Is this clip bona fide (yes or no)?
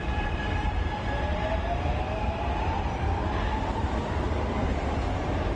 yes